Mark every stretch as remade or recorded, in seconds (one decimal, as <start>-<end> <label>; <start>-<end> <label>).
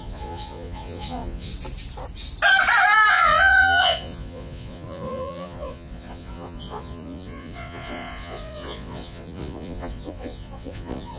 0.0-1.5 remade; 1.5-3.1 recorded; 3.1-11.2 remade